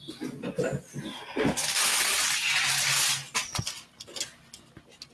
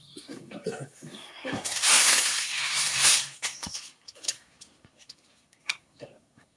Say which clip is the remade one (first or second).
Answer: second